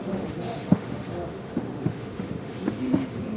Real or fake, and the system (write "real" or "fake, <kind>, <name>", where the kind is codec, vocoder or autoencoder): fake, autoencoder, DAC-VAE